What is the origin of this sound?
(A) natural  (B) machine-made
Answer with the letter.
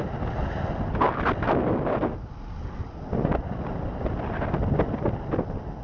A